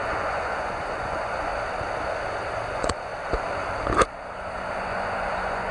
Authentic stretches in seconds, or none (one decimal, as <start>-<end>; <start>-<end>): 1.5-2.7; 3.1-4.7